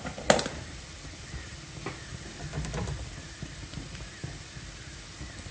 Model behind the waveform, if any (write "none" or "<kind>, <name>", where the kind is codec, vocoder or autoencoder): none